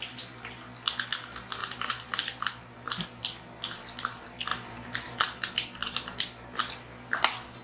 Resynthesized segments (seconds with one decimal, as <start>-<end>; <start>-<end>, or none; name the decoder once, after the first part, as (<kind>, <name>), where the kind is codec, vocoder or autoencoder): 1.6-3.2 (vocoder, BigVGAN v2); 4.5-5.2